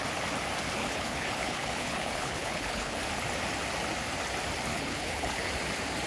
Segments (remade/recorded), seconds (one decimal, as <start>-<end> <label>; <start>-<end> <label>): 0.0-0.8 recorded; 0.8-3.0 remade; 3.0-4.7 recorded; 4.7-5.5 remade; 5.5-6.1 recorded